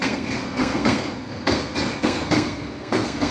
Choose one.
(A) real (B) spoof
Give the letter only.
B